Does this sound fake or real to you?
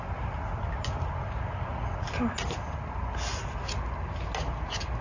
real